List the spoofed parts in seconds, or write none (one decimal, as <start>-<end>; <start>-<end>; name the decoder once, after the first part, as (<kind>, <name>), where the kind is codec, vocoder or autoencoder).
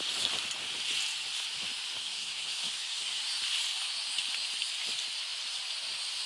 2.0-3.2 (codec, SNAC)